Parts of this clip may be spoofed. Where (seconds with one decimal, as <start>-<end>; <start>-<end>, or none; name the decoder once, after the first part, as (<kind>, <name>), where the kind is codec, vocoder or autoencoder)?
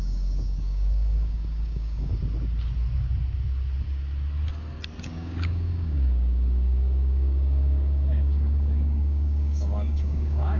0.0-2.1 (codec, DAC); 5.0-10.6